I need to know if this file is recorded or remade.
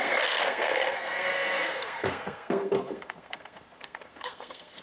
remade